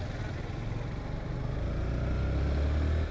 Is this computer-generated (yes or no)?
no